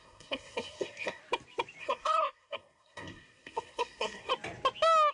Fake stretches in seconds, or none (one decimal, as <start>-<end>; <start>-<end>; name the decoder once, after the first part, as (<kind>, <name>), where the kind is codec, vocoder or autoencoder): 0.0-1.2 (codec, SNAC); 1.8-4.3